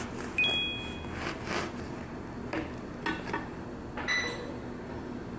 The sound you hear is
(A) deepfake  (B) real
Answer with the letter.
B